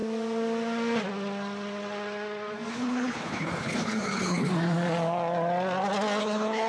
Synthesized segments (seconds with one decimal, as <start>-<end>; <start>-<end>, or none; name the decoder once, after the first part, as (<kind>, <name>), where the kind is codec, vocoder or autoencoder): 2.7-4.5 (codec, HILCodec); 6.2-6.7